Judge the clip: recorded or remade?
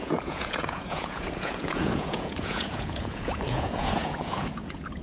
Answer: remade